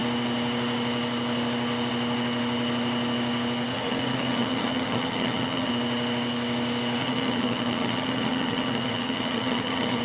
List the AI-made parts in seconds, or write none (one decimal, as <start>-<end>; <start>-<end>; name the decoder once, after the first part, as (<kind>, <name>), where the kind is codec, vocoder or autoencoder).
3.7-5.7 (vocoder, HiFi-GAN); 7.0-10.0